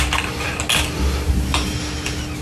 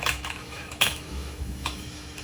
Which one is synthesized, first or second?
second